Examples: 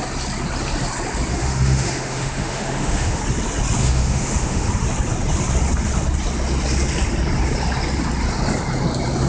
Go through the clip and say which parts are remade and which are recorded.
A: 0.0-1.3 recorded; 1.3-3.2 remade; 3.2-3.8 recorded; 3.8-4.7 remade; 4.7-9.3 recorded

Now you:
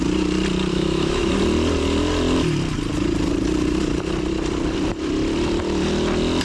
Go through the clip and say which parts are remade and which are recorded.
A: 0.0-0.7 recorded; 0.7-1.3 remade; 1.3-6.4 recorded

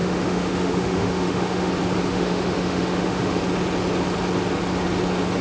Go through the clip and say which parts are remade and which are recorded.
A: 0.0-1.7 remade; 1.7-2.1 recorded; 2.1-3.4 remade; 3.4-5.4 recorded

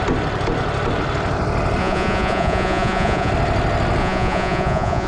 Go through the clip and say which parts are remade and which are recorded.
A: 0.0-1.8 recorded; 1.8-3.3 remade; 3.3-4.0 recorded; 4.0-5.1 remade

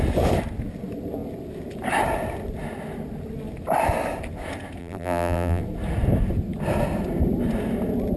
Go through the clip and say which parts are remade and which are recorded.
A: 0.0-4.8 recorded; 4.8-5.6 remade; 5.6-8.2 recorded